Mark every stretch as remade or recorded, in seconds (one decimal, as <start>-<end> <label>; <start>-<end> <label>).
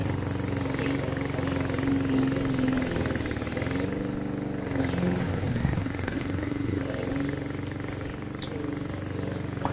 0.0-5.2 recorded; 5.2-6.8 remade; 6.8-9.7 recorded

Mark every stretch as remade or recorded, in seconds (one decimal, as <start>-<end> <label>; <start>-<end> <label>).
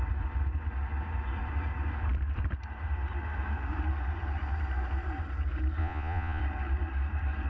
0.0-5.8 recorded; 5.8-6.4 remade; 6.4-7.5 recorded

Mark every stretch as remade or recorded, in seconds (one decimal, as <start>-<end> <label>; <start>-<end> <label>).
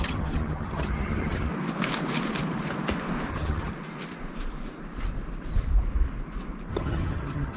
0.0-1.5 remade; 1.5-3.3 recorded; 3.3-3.7 remade; 3.7-6.7 recorded; 6.7-7.6 remade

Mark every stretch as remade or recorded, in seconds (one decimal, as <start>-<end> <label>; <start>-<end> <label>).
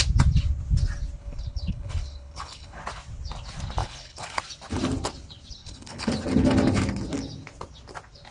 0.0-1.2 recorded; 1.2-2.8 remade; 2.8-3.8 recorded; 3.8-4.4 remade; 4.4-5.6 recorded; 5.6-6.1 remade; 6.1-8.3 recorded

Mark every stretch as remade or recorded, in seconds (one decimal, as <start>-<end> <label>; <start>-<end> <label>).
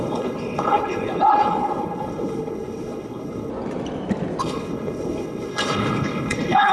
0.0-3.5 remade; 3.5-4.4 recorded; 4.4-6.7 remade